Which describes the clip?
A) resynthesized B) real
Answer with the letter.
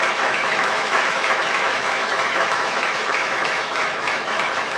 A